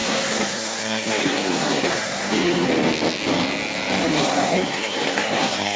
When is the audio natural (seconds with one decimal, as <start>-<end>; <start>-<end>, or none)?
2.7-4.0